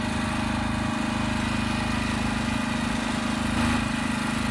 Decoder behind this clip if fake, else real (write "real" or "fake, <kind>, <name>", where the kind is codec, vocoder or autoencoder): real